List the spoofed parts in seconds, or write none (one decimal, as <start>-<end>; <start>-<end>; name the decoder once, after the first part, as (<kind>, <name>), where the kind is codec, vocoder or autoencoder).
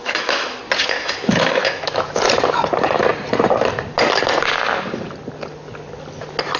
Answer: 0.0-0.6 (autoencoder, DAC-VAE); 1.0-2.2